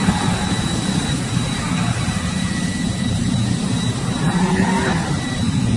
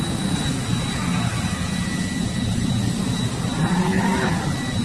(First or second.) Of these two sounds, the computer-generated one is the first